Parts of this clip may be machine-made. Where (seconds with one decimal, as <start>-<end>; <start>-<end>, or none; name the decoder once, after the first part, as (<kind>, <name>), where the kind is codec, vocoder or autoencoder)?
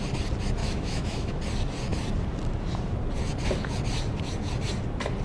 0.6-1.4 (autoencoder, DAC-VAE)